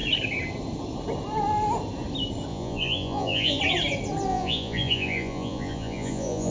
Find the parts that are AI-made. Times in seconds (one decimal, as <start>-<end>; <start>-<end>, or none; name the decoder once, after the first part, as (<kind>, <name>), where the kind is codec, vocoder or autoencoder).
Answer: 2.5-3.6 (vocoder, Vocos); 4.3-6.5